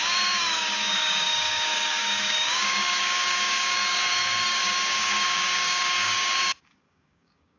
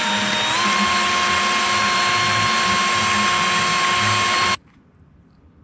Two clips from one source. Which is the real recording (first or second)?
second